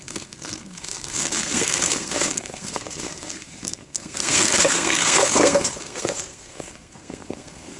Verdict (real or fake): fake